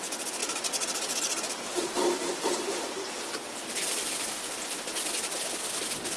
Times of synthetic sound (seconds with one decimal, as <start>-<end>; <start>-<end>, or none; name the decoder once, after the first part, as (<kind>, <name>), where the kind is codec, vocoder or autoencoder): none